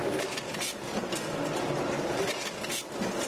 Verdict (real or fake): real